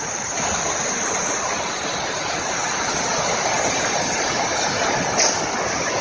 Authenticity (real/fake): real